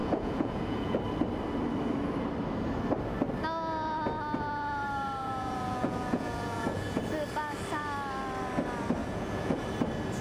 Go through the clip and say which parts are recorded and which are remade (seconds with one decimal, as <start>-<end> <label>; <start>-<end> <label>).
0.0-1.0 remade; 1.0-5.2 recorded; 5.2-7.0 remade; 7.0-9.0 recorded; 9.0-9.6 remade; 9.6-10.2 recorded